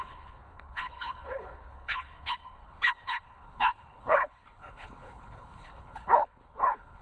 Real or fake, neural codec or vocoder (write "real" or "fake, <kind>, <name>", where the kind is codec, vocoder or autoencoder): fake, codec, HILCodec